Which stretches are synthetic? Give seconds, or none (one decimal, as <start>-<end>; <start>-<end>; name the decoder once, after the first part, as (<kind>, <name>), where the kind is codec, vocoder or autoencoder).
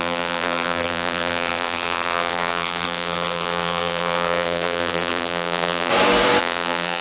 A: 0.0-5.9 (vocoder, BigVGAN v2); 6.4-7.0